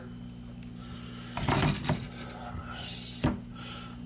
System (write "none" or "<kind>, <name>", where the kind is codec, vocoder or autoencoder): none